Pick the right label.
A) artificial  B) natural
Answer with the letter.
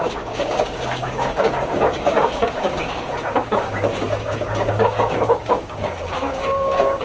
A